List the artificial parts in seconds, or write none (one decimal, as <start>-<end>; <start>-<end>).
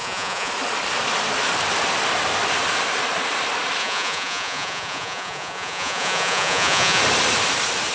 0.0-0.5; 3.8-7.0